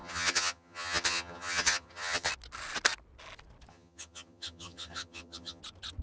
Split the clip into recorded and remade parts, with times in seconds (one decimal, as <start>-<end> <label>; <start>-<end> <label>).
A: 0.0-2.3 remade; 2.3-3.7 recorded; 3.7-5.6 remade; 5.6-6.0 recorded